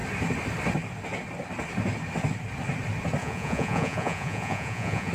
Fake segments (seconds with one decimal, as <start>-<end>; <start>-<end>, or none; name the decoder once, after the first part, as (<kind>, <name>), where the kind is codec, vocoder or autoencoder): 3.2-5.1 (vocoder, Vocos)